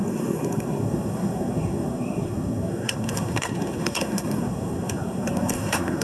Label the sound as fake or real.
fake